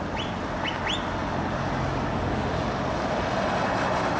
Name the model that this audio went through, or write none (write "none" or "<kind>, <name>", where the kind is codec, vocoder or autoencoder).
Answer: none